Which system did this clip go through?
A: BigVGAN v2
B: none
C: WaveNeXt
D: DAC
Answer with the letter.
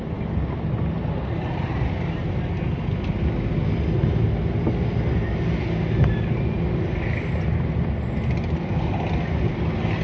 B